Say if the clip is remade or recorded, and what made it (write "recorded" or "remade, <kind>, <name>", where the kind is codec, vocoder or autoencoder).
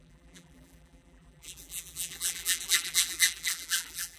remade, vocoder, BigVGAN v2